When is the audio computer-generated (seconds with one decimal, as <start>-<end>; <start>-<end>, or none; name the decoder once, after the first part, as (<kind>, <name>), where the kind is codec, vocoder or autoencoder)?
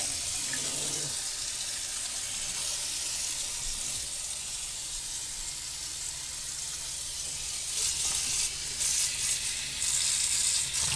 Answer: 4.4-5.3 (vocoder, Vocos)